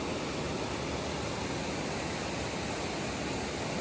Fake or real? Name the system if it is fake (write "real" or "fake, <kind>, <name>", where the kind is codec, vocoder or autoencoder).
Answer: real